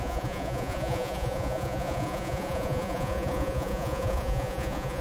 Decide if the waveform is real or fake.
fake